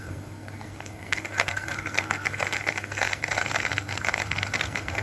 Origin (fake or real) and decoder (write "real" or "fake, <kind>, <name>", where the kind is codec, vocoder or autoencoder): fake, codec, SNAC